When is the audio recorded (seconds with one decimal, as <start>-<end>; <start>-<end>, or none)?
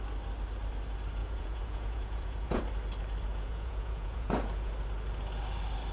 0.0-1.2; 2.6-3.3; 4.7-5.9